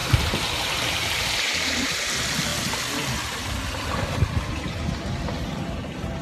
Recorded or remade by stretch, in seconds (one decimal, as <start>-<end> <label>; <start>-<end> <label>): 0.0-2.1 remade; 2.1-6.2 recorded